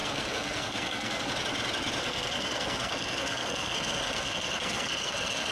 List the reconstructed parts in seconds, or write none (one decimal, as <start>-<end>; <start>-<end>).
0.0-1.3; 2.0-5.5